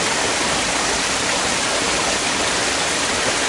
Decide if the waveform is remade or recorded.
recorded